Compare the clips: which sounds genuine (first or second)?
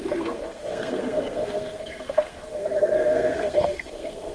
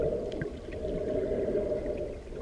second